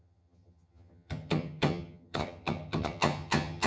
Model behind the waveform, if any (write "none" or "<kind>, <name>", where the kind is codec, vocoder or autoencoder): vocoder, HiFi-GAN